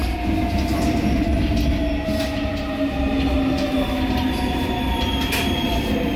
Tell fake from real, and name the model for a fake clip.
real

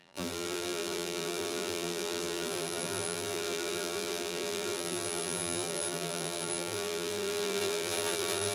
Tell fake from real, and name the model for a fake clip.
fake, vocoder, BigVGAN v2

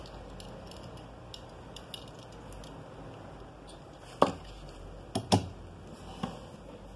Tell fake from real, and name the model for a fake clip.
real